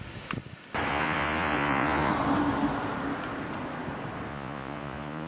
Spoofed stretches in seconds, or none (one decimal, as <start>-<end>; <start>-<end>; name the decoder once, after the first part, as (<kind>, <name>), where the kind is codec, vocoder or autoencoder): 0.9-2.1 (vocoder, Vocos); 4.3-5.3